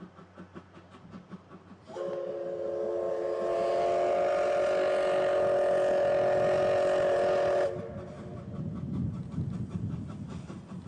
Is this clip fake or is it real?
real